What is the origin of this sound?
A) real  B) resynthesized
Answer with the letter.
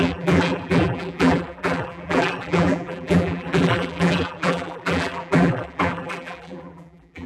B